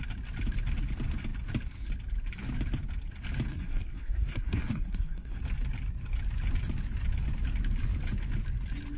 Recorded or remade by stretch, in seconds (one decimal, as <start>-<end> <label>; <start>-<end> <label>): 0.0-3.5 recorded; 3.5-5.4 remade; 5.4-9.0 recorded